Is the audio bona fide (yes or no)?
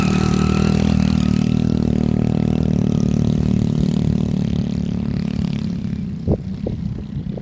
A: yes